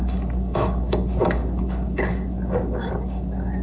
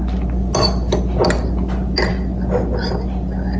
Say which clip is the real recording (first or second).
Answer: second